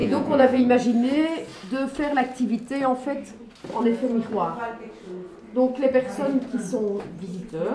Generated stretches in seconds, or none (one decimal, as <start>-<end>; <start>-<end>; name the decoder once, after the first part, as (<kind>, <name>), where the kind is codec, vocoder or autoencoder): 0.0-0.6 (vocoder, Vocos)